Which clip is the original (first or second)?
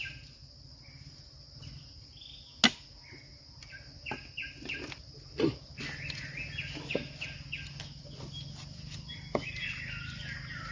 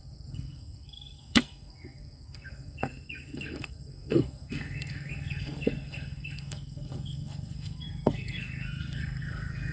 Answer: first